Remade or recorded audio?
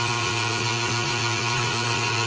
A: remade